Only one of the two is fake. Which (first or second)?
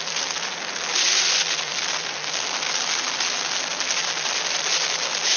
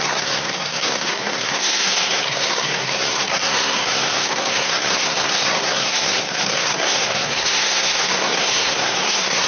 second